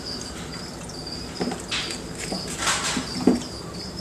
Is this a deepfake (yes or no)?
yes